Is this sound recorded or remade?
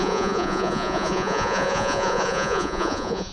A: remade